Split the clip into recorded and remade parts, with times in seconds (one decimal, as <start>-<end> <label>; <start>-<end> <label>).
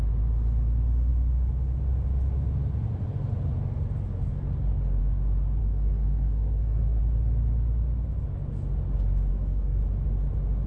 0.0-5.6 recorded; 5.6-7.0 remade; 7.0-9.3 recorded; 9.3-9.8 remade; 9.8-10.7 recorded